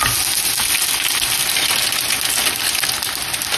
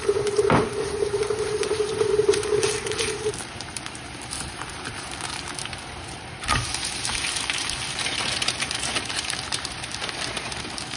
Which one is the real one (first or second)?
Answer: first